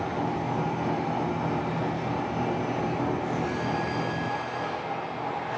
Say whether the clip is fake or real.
real